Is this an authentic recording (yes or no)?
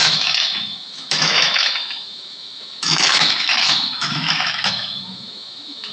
no